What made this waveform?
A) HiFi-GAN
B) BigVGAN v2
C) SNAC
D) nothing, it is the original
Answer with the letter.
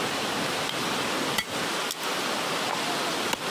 D